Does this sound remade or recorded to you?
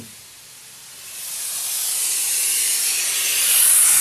recorded